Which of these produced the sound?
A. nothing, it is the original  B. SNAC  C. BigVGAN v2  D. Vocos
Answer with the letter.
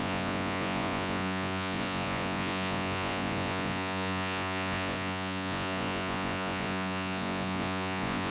D